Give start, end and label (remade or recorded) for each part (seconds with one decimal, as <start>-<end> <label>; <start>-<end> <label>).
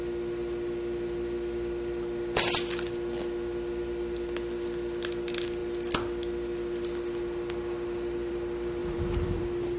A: 0.0-8.8 recorded; 8.8-9.4 remade; 9.4-9.8 recorded